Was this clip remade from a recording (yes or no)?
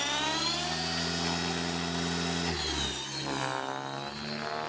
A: no